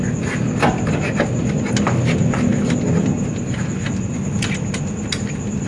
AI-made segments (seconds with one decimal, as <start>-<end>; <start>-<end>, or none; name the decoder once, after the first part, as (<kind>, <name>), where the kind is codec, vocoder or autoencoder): none